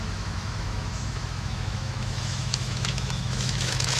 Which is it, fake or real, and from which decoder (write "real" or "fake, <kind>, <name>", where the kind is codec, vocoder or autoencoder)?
fake, autoencoder, DAC-VAE